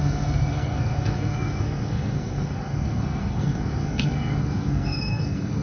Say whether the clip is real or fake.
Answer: fake